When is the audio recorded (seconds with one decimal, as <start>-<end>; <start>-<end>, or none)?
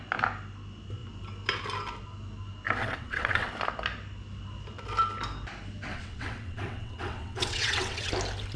0.0-2.8; 3.5-5.9; 8.1-8.6